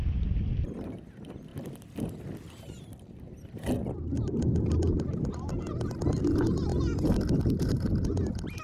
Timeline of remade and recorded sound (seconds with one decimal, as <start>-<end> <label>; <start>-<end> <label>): 0.0-8.6 recorded